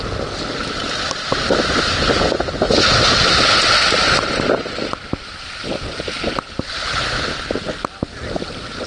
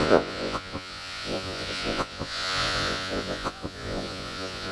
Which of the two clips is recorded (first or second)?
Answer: first